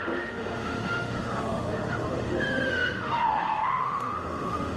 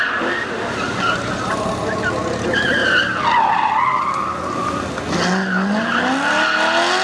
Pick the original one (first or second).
second